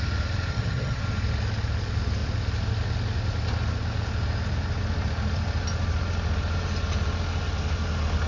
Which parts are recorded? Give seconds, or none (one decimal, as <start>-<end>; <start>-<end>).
0.0-0.5; 1.0-8.3

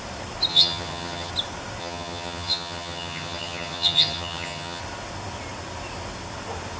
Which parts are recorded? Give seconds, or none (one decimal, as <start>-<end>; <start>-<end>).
0.0-0.5; 1.3-1.8; 4.8-6.8

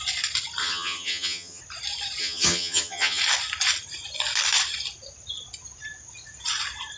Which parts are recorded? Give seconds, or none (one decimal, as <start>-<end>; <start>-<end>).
0.0-0.6; 1.6-2.2; 3.2-7.0

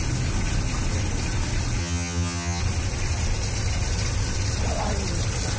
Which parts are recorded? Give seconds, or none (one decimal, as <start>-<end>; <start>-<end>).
0.0-1.8; 2.6-5.6

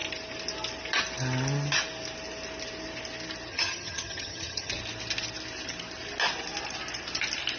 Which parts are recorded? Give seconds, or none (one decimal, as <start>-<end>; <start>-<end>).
0.0-3.5; 4.7-7.6